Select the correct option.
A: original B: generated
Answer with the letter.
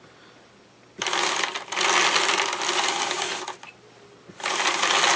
A